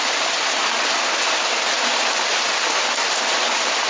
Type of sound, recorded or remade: recorded